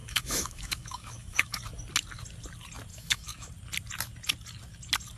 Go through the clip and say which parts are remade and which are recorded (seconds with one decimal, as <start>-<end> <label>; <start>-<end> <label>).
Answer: 0.0-1.6 remade; 1.6-2.9 recorded; 2.9-3.5 remade; 3.5-5.2 recorded